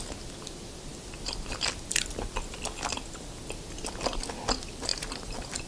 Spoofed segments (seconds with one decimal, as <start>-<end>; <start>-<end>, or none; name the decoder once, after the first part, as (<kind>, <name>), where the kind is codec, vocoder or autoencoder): 0.9-3.4 (vocoder, BigVGAN v2); 4.9-5.7